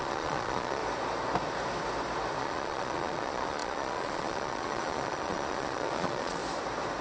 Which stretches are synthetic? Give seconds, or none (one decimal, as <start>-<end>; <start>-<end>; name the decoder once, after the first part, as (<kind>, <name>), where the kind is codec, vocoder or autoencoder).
0.0-0.8 (vocoder, Vocos); 2.4-6.4

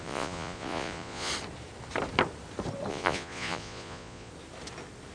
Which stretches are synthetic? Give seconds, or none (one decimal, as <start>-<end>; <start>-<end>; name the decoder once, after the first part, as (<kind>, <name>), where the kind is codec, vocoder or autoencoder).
0.0-1.3 (vocoder, Vocos); 2.9-4.3

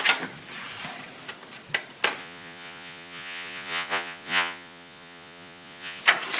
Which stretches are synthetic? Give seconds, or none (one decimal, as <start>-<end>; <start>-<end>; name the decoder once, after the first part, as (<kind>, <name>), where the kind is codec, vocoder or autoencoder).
2.2-6.0 (vocoder, Vocos)

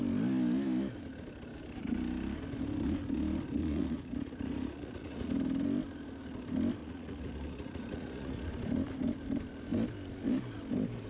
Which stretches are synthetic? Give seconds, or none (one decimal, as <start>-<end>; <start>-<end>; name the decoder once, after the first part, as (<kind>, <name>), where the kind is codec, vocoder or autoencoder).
3.6-5.3 (vocoder, Vocos); 6.8-8.5

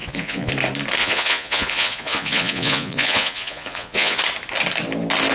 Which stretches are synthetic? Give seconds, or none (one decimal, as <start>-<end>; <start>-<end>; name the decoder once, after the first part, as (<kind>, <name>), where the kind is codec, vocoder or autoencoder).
0.0-0.5 (vocoder, Vocos); 1.0-4.2

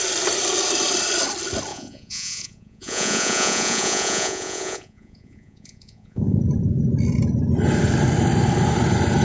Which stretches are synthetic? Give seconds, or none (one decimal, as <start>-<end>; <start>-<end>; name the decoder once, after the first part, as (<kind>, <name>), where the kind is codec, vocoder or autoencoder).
1.7-6.4 (vocoder, Vocos)

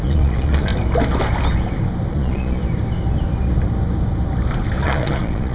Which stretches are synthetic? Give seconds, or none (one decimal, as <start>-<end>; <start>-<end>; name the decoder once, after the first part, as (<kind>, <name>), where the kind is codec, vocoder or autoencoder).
0.0-0.7 (vocoder, Vocos); 2.1-2.6; 4.8-5.5

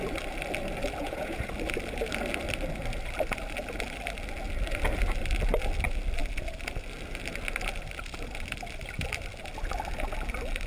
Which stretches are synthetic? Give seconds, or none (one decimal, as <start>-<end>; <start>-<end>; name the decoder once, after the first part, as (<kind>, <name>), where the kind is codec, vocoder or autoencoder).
1.0-1.5 (vocoder, Vocos)